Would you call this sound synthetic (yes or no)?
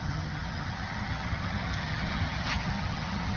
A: yes